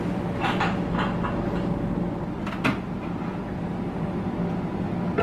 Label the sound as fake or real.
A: real